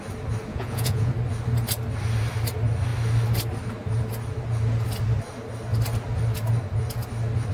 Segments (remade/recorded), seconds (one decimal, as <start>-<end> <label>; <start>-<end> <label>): 0.0-0.5 recorded; 0.5-1.1 remade; 1.1-7.5 recorded